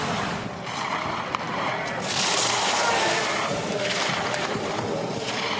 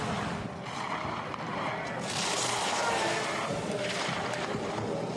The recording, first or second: second